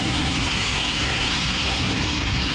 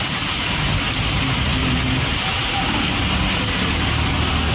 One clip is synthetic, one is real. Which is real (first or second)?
second